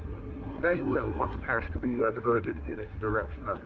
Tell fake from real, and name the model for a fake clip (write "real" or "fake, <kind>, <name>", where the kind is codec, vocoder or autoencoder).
fake, codec, SNAC